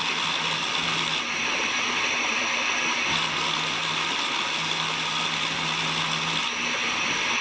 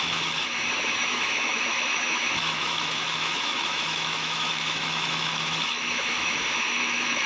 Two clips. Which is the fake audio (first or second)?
second